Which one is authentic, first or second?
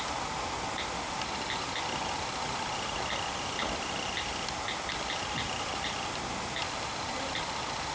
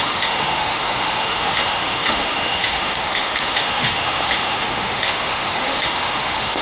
first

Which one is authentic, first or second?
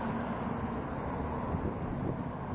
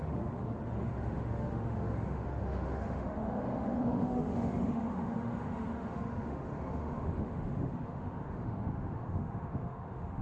first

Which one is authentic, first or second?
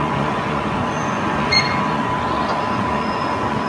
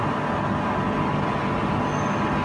second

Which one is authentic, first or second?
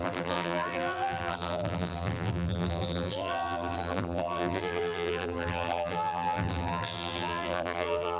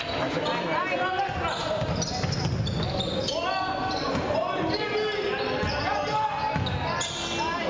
second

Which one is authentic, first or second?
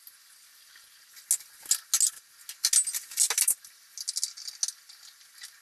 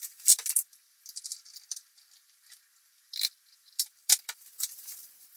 first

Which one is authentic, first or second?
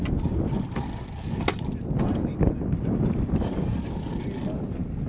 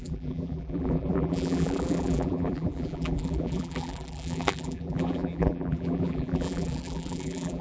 first